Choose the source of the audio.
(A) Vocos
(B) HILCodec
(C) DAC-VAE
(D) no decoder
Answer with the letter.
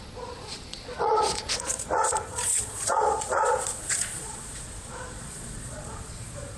A